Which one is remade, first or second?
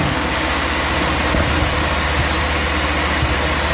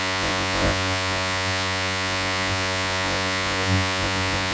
second